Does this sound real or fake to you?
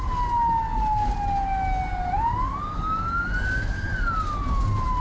real